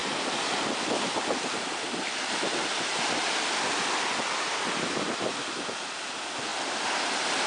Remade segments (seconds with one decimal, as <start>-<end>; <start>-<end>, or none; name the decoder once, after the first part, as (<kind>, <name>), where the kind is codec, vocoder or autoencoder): none

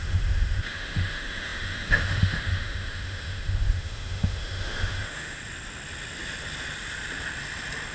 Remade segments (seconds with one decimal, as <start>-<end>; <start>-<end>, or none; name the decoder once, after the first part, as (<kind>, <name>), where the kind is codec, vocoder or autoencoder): 0.0-5.4 (autoencoder, DAC-VAE)